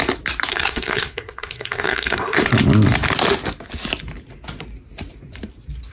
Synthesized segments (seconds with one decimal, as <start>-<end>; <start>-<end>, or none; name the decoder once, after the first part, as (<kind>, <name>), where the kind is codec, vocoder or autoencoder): 0.5-2.4 (codec, SNAC)